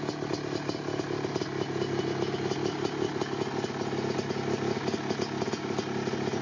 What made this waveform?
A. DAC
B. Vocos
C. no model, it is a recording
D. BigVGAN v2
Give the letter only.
C